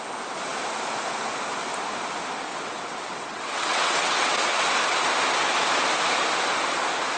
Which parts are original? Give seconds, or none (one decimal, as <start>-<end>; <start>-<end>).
0.0-2.5; 4.6-7.2